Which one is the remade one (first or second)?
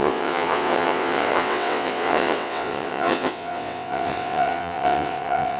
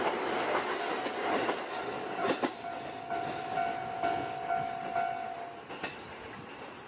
first